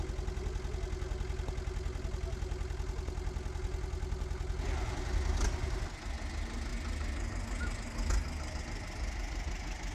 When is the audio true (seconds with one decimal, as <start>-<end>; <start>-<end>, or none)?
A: 0.0-9.9